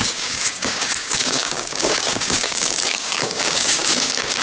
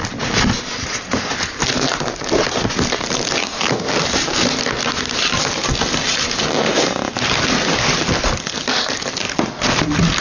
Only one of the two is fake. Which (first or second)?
first